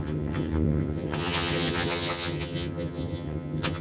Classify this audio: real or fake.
fake